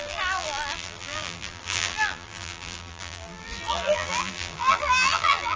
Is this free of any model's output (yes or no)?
no